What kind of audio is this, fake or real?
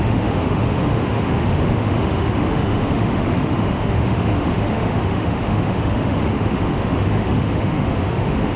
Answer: fake